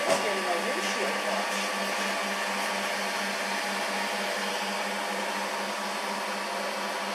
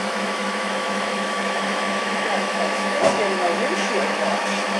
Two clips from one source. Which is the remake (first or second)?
second